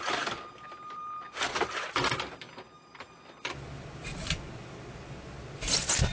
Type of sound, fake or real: real